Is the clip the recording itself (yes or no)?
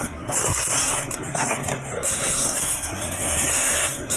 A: no